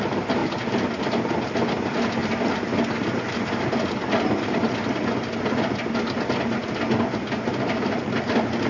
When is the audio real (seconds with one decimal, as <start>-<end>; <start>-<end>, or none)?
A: 0.0-8.7